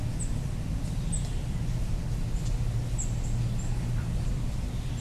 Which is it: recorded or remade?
recorded